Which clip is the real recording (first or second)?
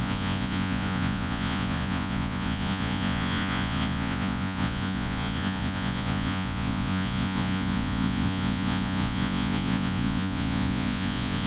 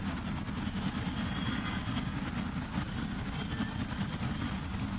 second